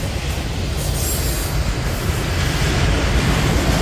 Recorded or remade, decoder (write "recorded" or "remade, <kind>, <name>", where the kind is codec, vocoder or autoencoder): recorded